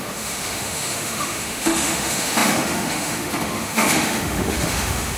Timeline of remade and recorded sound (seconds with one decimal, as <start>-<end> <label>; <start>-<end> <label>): 0.0-5.2 remade